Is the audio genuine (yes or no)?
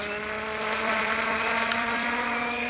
no